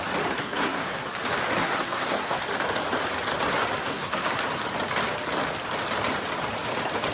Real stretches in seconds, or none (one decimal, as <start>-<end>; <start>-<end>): 0.0-0.4; 1.0-1.6; 2.4-3.8; 4.4-7.1